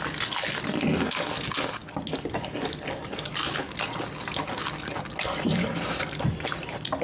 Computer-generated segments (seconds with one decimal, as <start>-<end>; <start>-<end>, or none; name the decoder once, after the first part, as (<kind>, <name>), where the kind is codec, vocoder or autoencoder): none